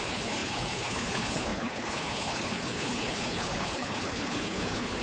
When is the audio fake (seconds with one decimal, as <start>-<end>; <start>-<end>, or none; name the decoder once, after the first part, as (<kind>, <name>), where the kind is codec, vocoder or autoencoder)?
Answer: 0.0-5.0 (codec, HILCodec)